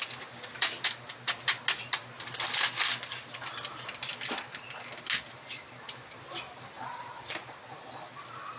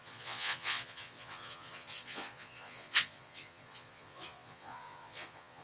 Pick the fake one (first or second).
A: second